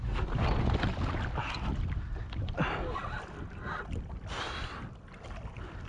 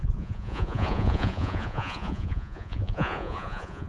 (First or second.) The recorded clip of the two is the first